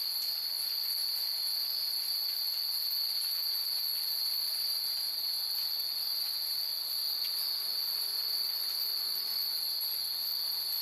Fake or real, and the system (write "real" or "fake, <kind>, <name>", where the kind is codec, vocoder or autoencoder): real